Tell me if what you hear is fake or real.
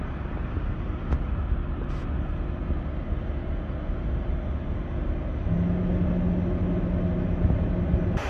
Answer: real